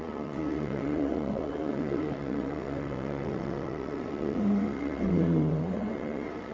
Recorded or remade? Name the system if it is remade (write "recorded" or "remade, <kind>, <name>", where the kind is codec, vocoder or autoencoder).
remade, vocoder, WaveNeXt